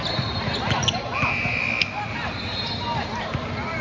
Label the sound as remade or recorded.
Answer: recorded